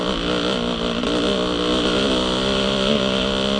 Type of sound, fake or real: real